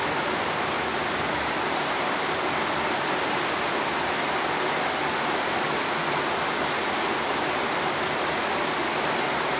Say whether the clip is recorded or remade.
recorded